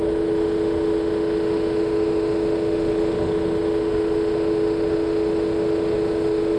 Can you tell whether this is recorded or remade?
remade